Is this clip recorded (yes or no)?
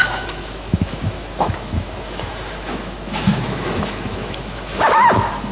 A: no